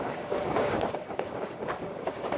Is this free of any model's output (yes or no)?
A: no